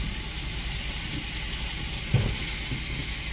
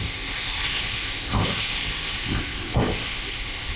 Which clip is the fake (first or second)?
second